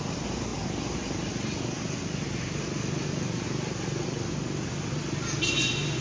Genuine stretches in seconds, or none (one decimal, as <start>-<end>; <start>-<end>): 0.0-6.0